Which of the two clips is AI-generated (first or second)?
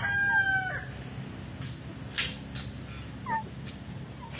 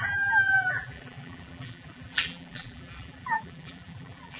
second